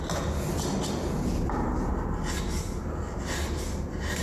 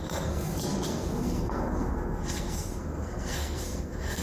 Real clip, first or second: first